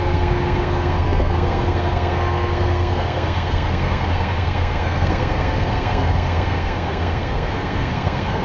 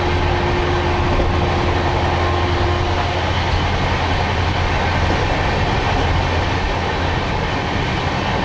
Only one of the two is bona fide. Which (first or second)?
second